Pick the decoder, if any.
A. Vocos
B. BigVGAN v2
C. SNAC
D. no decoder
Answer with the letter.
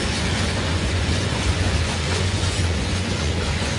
A